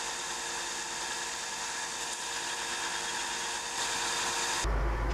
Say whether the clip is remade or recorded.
recorded